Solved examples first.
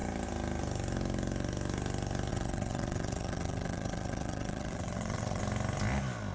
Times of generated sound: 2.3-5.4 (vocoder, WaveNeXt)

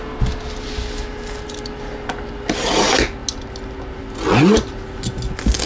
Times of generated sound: none

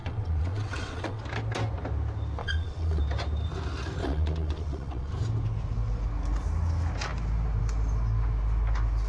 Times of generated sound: 0.0-1.2 (vocoder, WaveNeXt); 2.4-3.0; 4.0-5.1

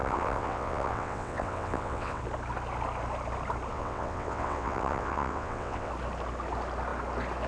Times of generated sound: 0.0-2.2 (vocoder, WaveNeXt); 3.7-5.9

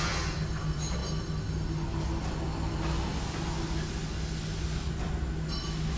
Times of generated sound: none

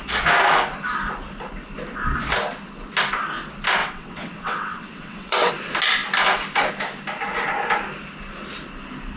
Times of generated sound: 3.8-5.5 (vocoder, WaveNeXt)